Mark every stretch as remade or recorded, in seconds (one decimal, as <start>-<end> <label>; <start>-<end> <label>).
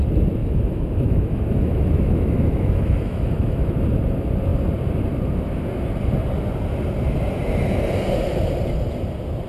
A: 0.0-0.4 recorded; 0.4-3.7 remade; 3.7-9.5 recorded